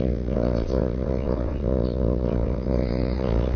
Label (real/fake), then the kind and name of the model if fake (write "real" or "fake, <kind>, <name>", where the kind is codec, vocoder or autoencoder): fake, vocoder, WaveNeXt